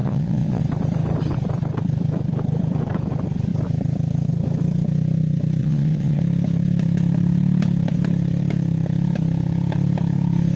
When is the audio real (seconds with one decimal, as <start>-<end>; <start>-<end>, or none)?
0.6-5.6; 6.2-10.6